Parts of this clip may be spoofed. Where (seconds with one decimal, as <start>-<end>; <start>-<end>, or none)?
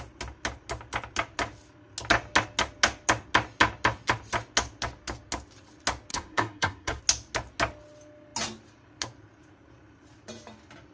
6.1-7.0